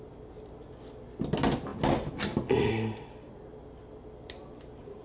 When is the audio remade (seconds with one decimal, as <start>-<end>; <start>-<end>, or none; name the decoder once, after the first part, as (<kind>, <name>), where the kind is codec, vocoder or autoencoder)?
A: none